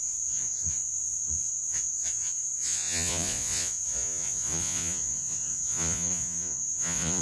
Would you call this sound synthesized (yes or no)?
yes